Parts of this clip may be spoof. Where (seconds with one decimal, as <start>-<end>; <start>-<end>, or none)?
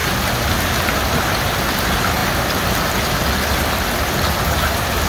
none